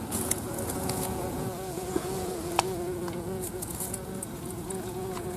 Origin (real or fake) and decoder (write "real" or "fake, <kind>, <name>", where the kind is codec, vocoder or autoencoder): fake, vocoder, Vocos